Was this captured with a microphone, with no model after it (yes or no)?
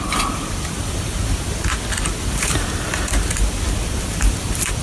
no